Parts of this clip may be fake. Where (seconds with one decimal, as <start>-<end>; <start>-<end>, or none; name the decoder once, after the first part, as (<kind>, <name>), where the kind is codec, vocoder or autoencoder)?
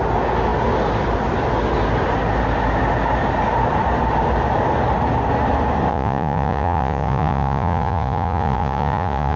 5.9-9.4 (vocoder, Vocos)